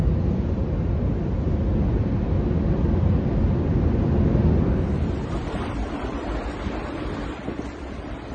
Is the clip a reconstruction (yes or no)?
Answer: no